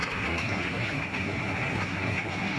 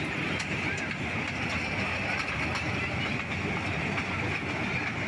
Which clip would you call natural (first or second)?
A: second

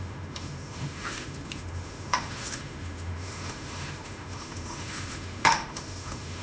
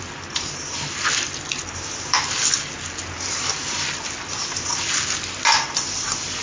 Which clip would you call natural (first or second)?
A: second